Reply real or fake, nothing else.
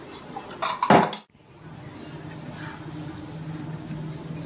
real